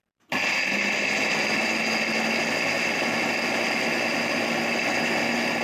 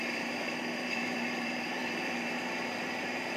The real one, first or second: first